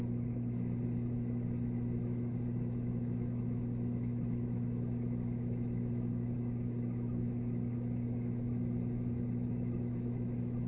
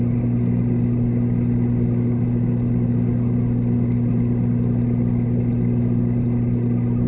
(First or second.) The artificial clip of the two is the first